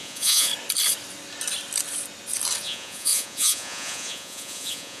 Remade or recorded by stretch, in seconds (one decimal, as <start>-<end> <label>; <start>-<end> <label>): 0.0-0.5 remade; 0.5-2.6 recorded; 2.6-5.0 remade